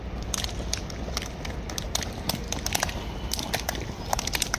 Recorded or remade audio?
recorded